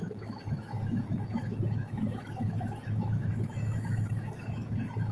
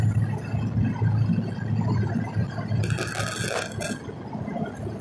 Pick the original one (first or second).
second